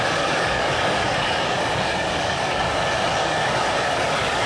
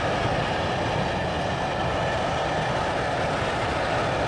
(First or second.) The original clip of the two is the second